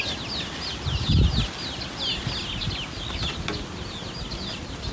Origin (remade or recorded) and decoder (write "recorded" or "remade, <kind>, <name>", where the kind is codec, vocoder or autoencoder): recorded